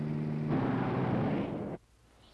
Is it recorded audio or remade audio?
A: recorded